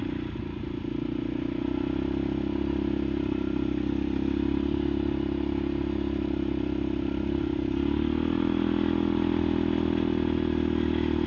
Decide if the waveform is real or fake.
real